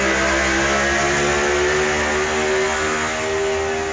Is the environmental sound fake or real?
real